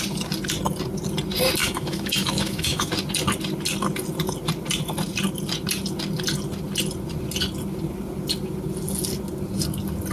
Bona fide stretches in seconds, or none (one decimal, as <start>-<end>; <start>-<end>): 0.0-1.6; 2.9-10.1